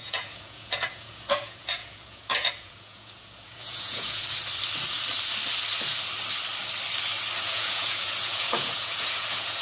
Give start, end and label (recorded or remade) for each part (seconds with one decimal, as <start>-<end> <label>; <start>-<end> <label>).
0.0-4.2 remade; 4.2-7.4 recorded; 7.4-9.6 remade